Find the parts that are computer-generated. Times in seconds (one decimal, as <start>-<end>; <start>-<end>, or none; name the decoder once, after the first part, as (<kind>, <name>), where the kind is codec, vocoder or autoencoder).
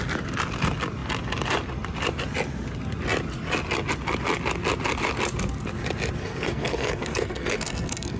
6.2-8.2 (codec, SNAC)